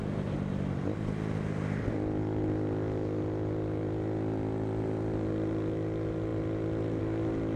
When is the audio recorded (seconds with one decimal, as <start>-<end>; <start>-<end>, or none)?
0.0-7.6